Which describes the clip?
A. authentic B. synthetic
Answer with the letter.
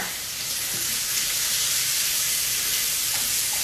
A